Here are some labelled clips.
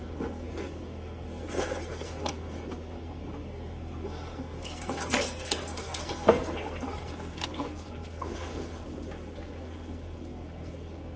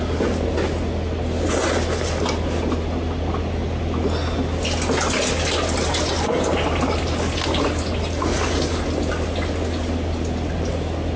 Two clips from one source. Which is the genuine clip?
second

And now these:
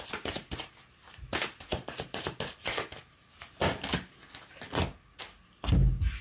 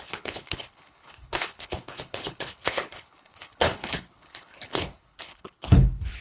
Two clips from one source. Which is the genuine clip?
first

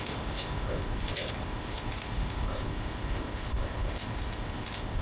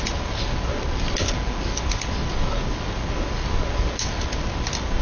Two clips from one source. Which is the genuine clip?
second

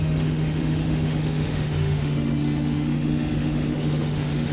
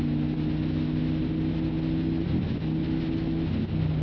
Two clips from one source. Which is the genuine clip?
second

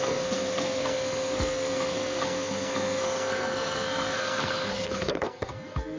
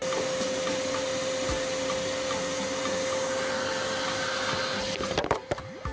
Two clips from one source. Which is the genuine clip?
second